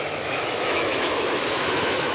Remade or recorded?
remade